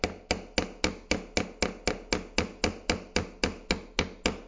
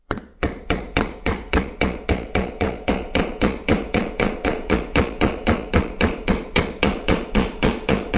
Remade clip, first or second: second